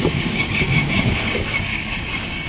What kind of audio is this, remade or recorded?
remade